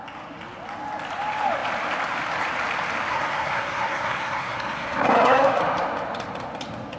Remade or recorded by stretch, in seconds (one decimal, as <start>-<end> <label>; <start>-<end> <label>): 0.0-3.1 recorded; 3.1-5.6 remade; 5.6-7.0 recorded